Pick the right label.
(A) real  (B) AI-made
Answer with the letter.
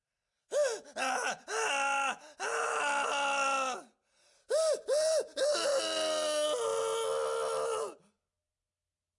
A